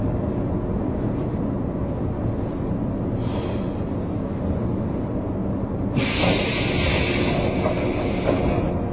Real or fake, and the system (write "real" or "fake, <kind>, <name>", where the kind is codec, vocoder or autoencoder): real